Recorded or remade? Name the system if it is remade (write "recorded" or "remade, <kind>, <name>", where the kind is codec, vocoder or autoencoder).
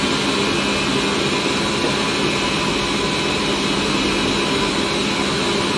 recorded